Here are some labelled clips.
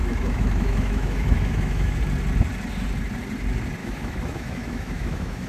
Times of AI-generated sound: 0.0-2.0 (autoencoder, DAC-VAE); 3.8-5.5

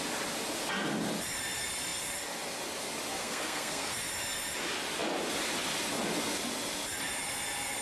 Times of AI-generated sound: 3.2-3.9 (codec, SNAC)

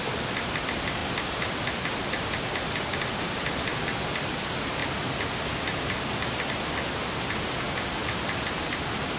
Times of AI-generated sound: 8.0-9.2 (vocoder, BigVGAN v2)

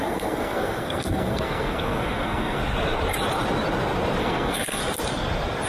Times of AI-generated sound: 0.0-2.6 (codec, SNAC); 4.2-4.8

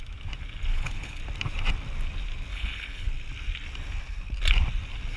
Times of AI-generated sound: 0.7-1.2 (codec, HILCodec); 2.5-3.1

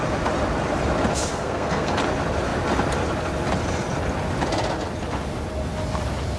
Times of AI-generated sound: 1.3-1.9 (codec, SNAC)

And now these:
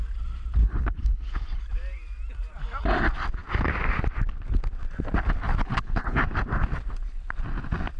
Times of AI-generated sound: 0.6-1.6 (codec, HILCodec); 5.6-6.2